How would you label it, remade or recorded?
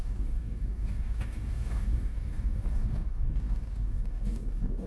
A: remade